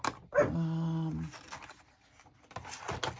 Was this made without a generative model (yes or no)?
yes